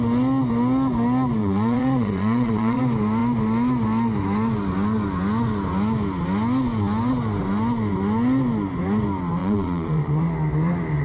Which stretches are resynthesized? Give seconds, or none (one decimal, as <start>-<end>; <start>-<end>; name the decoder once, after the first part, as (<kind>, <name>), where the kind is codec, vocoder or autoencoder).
1.4-2.8 (vocoder, Vocos); 9.4-10.2